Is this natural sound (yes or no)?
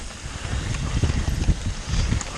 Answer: no